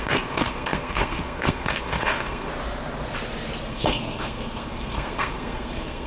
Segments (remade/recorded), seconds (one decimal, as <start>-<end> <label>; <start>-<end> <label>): 0.0-2.5 remade; 2.5-3.7 recorded; 3.7-6.1 remade